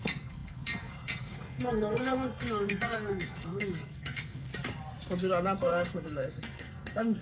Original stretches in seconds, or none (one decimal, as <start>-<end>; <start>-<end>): 4.5-5.6